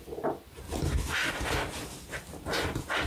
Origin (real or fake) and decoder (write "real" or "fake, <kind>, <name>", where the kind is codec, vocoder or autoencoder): real